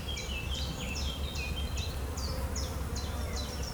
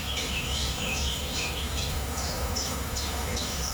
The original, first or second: first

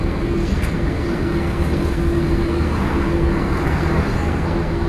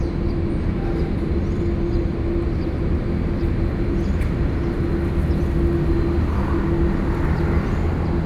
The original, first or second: second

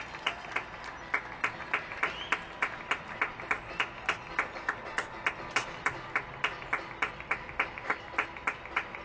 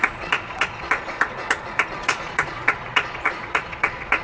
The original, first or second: first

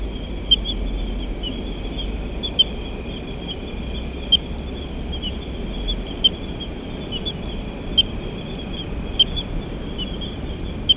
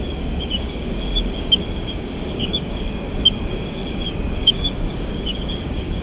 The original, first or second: first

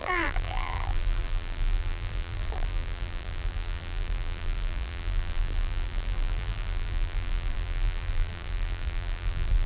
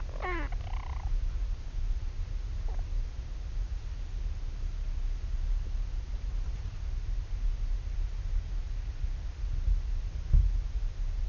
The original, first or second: second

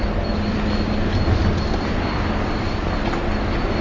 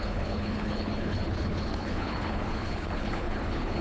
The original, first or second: first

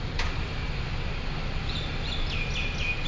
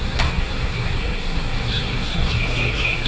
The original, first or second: first